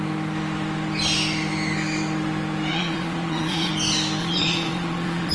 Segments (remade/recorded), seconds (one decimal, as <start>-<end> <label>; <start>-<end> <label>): 0.0-2.7 recorded; 2.7-3.7 remade; 3.7-4.2 recorded; 4.2-5.3 remade